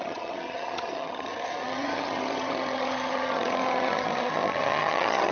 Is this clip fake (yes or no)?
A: yes